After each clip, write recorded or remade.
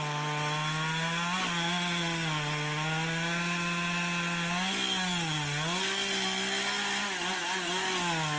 recorded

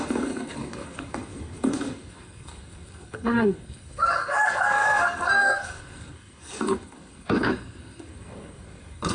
remade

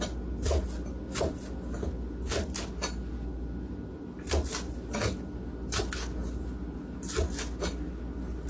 recorded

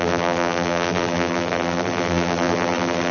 remade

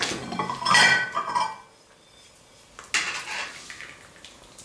recorded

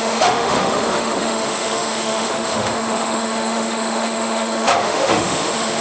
remade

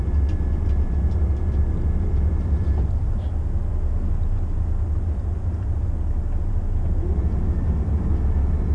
recorded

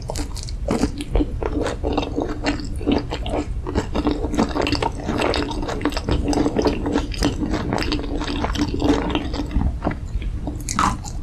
recorded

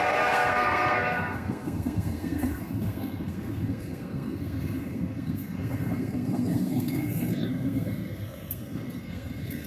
remade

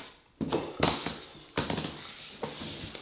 recorded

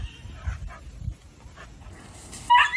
recorded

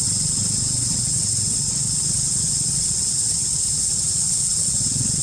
remade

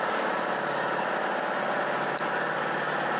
remade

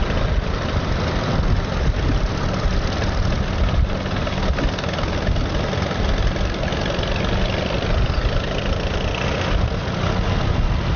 recorded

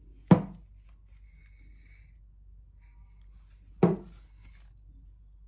recorded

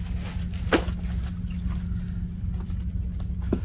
recorded